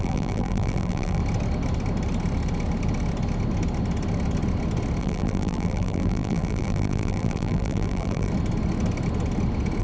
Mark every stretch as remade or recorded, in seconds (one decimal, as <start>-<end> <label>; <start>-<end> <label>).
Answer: 0.0-1.2 remade; 1.2-5.0 recorded; 5.0-8.3 remade; 8.3-9.8 recorded